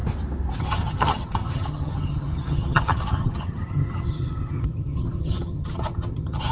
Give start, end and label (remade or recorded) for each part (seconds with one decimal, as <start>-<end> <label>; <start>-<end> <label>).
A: 0.0-0.6 recorded; 0.6-6.5 remade